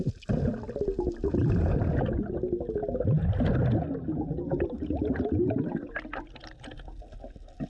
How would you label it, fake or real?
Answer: real